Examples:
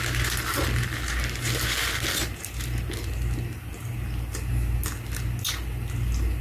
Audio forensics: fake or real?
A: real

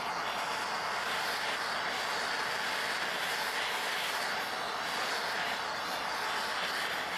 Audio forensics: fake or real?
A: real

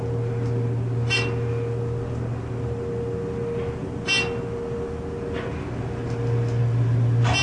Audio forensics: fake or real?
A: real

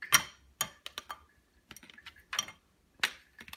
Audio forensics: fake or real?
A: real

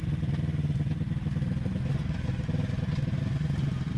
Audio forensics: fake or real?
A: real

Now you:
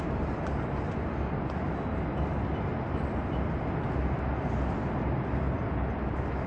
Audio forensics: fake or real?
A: real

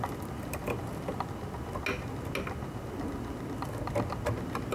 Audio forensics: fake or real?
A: real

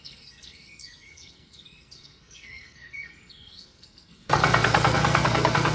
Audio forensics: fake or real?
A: fake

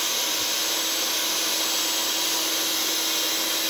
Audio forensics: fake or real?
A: real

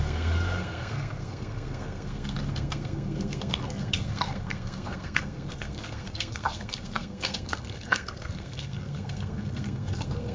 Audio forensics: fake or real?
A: fake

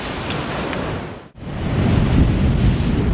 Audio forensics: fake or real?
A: real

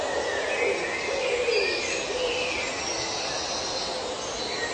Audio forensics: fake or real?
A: real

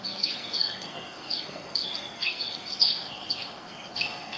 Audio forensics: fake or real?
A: fake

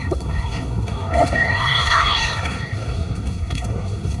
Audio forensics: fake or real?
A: fake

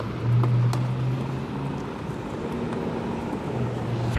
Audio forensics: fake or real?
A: real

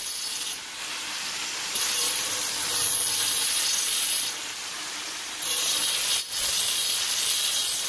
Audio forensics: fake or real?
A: real